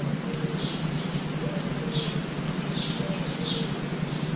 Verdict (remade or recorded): recorded